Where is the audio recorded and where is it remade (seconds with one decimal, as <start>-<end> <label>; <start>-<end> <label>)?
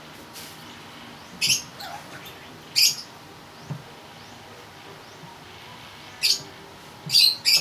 0.0-7.6 recorded